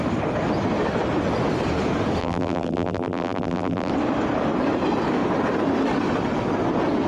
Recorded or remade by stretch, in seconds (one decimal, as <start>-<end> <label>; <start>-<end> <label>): 0.0-2.2 recorded; 2.2-3.9 remade; 3.9-7.1 recorded